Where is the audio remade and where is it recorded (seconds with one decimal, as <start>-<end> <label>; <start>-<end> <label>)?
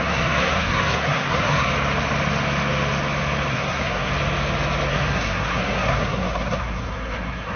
0.0-1.7 remade; 1.7-3.5 recorded; 3.5-4.1 remade; 4.1-4.9 recorded; 4.9-7.6 remade